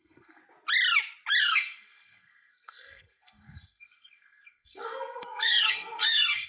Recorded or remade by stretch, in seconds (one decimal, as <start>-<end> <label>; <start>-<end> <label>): 0.0-0.4 remade; 0.4-1.4 recorded; 1.4-6.5 remade